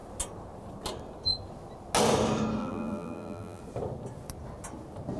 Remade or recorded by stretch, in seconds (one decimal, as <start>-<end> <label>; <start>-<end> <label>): 0.0-2.6 recorded; 2.6-3.6 remade; 3.6-5.2 recorded